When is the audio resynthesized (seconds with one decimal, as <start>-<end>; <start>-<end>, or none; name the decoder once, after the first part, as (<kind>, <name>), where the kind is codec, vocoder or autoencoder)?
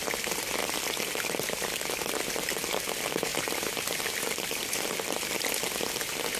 0.6-2.3 (vocoder, BigVGAN v2); 3.3-4.9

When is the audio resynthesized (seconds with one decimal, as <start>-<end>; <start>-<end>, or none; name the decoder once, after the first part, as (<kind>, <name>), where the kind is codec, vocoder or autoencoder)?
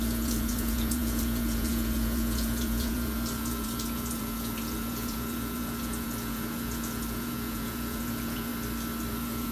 0.0-8.5 (vocoder, Vocos); 9.1-9.5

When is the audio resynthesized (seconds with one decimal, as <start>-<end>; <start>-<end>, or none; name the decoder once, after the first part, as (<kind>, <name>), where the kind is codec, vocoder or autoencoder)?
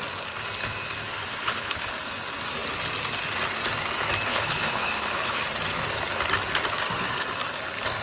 1.1-1.9 (codec, HILCodec); 4.3-5.4